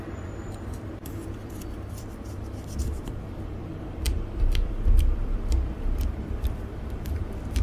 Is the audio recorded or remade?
remade